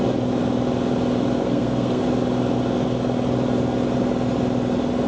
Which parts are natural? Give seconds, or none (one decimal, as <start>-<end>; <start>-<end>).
0.0-1.4; 2.0-5.1